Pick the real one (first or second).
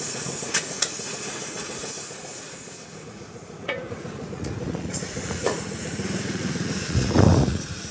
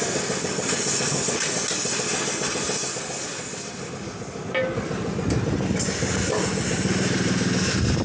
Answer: second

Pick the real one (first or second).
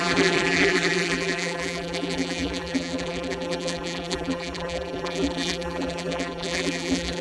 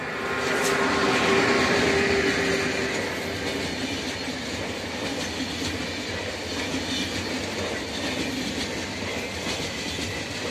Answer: second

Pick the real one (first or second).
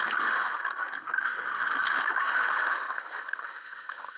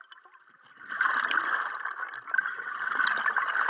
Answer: second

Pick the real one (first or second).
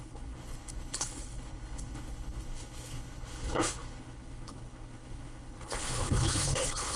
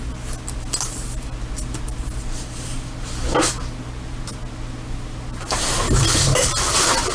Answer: second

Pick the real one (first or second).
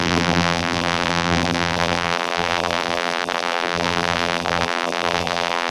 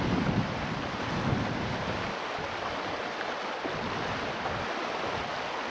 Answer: second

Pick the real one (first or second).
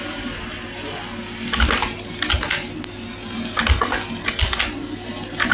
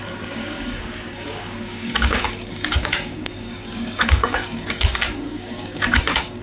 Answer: first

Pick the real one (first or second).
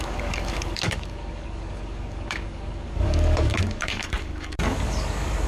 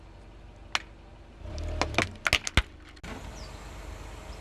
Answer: second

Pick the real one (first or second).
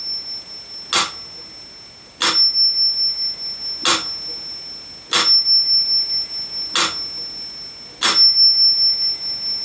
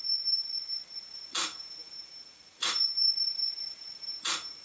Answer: first